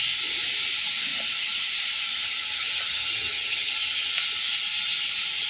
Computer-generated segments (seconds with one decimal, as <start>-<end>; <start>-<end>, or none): 2.1-4.1